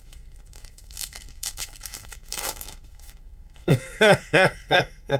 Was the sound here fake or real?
fake